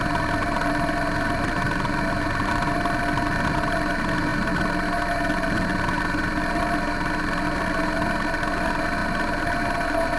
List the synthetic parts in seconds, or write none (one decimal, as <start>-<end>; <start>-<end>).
none